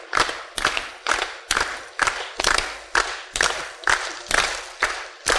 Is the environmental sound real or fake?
real